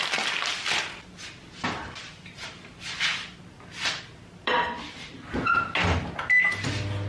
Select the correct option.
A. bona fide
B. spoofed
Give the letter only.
A